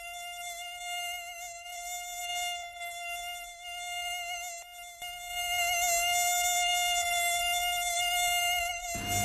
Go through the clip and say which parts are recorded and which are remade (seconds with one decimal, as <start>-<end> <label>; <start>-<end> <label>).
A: 0.0-9.2 recorded